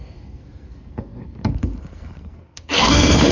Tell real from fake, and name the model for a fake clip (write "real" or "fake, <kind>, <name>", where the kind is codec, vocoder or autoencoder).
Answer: fake, codec, SNAC